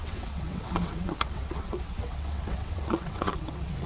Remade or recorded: remade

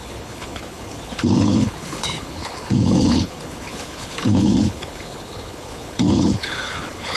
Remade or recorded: remade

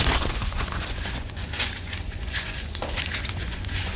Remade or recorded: remade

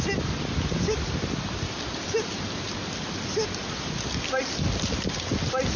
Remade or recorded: recorded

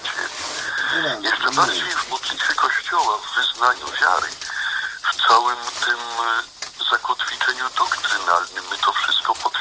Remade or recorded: recorded